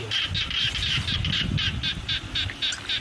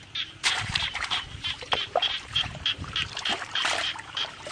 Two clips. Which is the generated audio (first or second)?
second